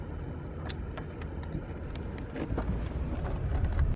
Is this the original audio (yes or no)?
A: yes